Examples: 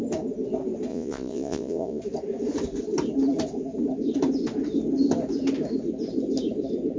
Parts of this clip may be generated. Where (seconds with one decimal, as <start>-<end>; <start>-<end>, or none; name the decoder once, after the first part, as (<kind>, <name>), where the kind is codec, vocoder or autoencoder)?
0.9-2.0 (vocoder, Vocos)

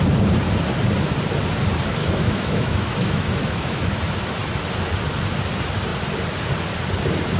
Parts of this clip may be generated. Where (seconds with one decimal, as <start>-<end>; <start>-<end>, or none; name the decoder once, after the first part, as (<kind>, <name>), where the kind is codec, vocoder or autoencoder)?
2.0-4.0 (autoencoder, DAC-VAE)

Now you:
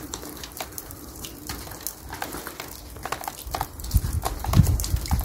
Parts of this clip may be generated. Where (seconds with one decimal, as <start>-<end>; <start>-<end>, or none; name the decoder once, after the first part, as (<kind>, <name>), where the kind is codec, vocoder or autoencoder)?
0.0-1.3 (vocoder, BigVGAN v2); 4.4-5.2

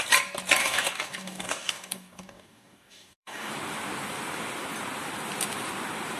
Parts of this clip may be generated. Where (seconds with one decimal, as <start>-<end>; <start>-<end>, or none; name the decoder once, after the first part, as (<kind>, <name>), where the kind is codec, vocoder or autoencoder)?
0.6-3.5 (codec, DAC)